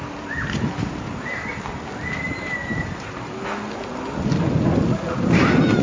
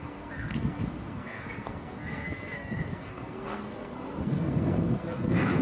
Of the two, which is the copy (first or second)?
second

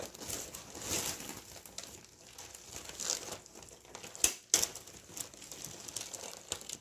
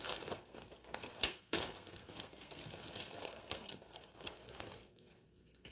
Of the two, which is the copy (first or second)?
second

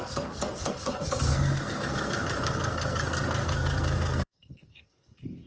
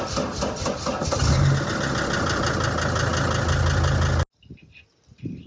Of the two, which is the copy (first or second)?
first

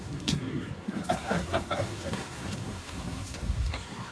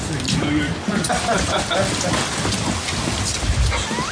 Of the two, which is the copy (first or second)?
first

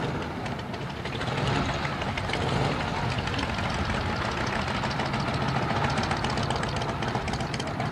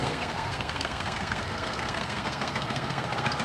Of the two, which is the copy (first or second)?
second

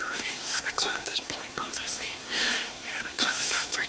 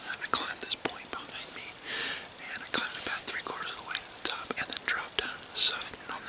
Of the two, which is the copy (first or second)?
first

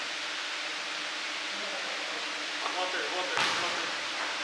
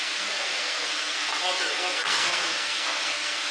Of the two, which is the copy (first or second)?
second